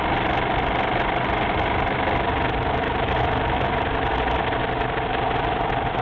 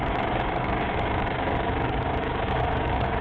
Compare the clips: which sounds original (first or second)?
first